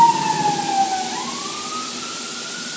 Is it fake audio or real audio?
real